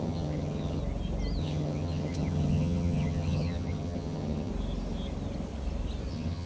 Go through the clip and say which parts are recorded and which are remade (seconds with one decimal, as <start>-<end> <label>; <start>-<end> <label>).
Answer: 0.0-0.8 remade; 0.8-1.4 recorded; 1.4-4.5 remade; 4.5-6.1 recorded; 6.1-6.5 remade